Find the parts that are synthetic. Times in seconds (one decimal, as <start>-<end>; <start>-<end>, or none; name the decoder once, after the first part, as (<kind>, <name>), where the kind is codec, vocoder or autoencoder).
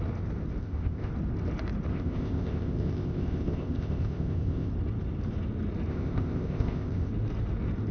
0.6-1.1 (codec, ZipCodec); 1.9-4.7; 5.9-7.1